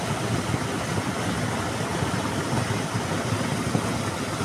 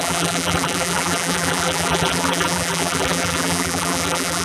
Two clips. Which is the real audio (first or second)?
first